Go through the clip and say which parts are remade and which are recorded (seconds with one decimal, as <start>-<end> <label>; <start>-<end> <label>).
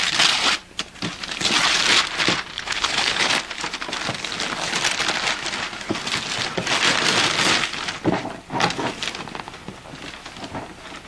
0.0-2.5 recorded; 2.5-3.3 remade; 3.3-11.1 recorded